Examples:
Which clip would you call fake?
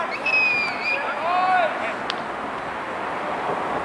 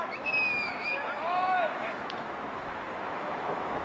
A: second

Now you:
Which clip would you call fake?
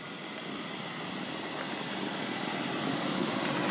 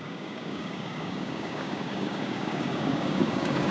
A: second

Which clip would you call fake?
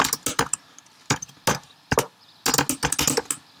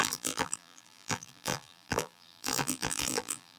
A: second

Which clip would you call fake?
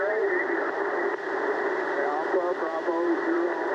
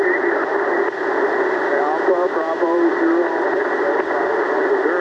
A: first